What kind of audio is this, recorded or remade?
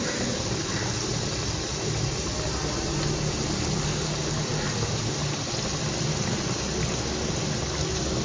recorded